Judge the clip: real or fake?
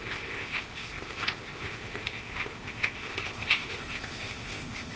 fake